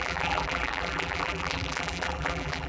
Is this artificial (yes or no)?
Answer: yes